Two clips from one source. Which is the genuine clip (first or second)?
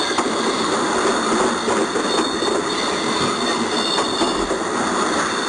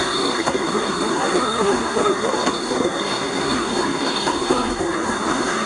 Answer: first